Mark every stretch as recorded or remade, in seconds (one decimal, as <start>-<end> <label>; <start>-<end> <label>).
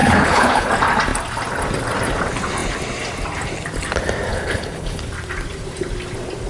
0.0-0.7 remade; 0.7-4.3 recorded; 4.3-5.0 remade; 5.0-6.5 recorded